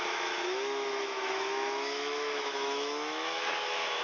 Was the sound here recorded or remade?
remade